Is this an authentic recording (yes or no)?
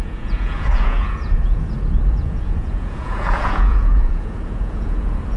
no